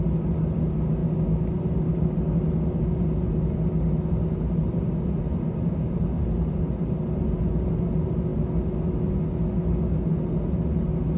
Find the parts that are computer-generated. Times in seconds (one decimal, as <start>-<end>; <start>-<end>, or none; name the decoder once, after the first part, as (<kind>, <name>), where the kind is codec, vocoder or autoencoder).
none